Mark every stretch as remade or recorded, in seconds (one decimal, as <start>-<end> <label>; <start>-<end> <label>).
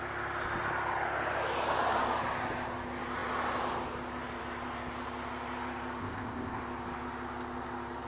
0.0-6.0 recorded; 6.0-6.6 remade; 6.6-8.1 recorded